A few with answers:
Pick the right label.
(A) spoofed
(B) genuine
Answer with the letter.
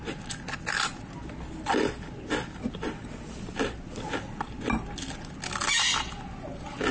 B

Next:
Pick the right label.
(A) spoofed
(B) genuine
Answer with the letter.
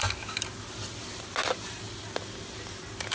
B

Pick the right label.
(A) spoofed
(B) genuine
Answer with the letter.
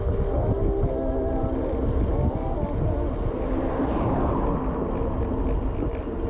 B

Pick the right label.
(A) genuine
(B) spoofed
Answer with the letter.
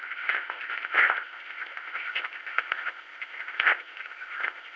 B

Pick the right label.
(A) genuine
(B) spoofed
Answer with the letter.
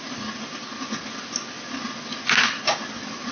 A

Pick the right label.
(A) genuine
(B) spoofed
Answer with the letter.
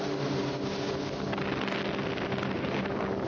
A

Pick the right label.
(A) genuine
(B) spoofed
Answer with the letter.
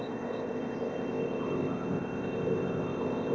B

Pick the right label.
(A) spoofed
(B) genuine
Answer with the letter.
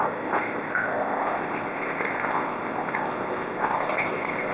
A